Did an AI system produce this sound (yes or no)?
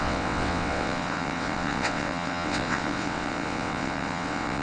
yes